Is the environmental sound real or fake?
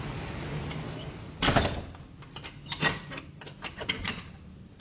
real